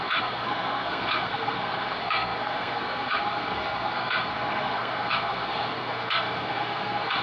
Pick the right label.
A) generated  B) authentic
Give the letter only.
A